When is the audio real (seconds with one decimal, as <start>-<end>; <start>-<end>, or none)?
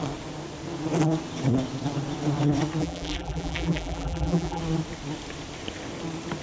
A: 0.0-2.8; 4.6-6.4